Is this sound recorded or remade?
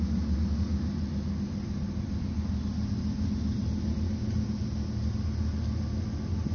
recorded